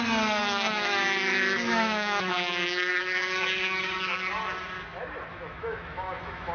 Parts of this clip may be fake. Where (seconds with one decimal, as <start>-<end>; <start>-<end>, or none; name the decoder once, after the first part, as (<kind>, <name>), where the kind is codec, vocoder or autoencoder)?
0.4-4.3 (autoencoder, DAC-VAE); 5.3-6.5